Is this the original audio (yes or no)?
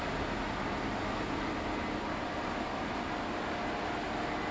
yes